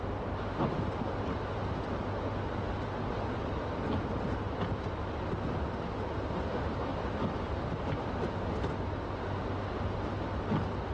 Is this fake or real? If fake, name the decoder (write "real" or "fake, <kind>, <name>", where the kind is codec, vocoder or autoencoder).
real